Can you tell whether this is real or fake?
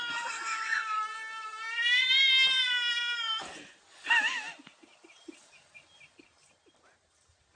real